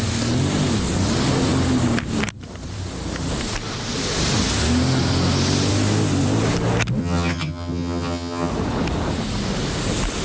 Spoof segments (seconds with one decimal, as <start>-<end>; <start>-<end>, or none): 7.0-8.5